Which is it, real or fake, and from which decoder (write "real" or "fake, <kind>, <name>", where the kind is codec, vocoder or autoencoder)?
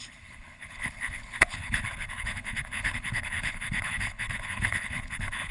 fake, codec, HILCodec